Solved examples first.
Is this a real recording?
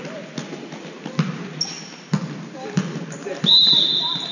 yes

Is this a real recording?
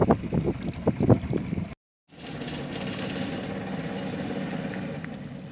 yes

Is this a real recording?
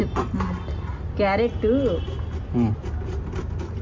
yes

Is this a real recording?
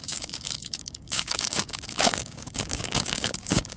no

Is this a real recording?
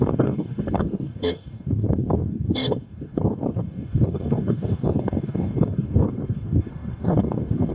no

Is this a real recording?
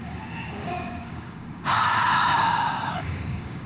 no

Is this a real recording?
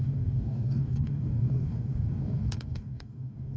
no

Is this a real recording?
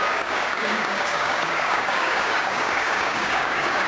no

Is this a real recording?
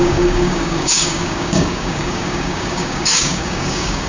no